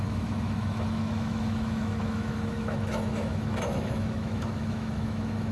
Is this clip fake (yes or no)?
yes